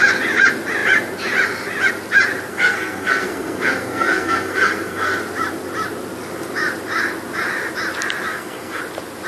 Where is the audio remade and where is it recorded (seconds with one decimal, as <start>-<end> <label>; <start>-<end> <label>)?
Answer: 0.0-2.5 recorded; 2.5-5.2 remade; 5.2-8.3 recorded; 8.3-8.8 remade; 8.8-9.3 recorded